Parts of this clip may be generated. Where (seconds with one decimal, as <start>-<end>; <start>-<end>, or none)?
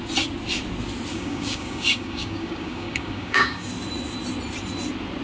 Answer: 1.1-3.7